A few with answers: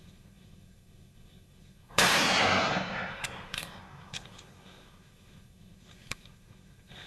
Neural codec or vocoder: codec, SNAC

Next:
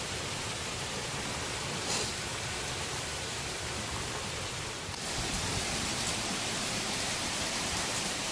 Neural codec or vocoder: vocoder, BigVGAN v2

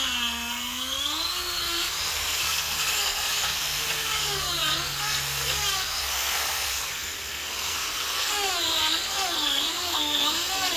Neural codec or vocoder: codec, SNAC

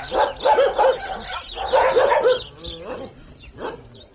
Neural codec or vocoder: none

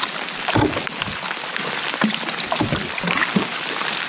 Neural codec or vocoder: none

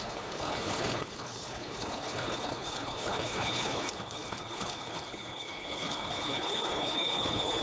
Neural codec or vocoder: codec, HILCodec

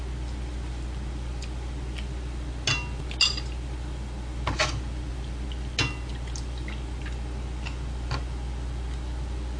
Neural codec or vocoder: none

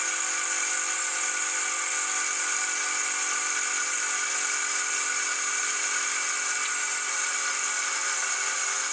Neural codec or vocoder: none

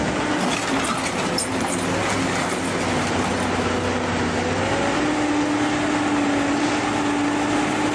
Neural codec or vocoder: none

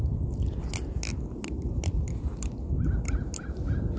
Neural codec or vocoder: none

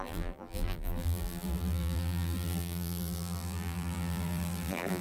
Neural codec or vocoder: vocoder, BigVGAN v2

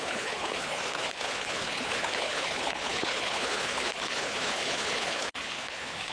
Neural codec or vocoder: codec, HILCodec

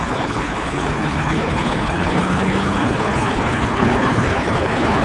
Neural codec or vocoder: codec, HILCodec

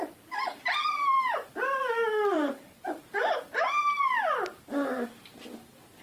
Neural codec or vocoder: vocoder, BigVGAN v2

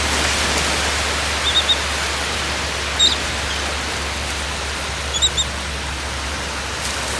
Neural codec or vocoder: none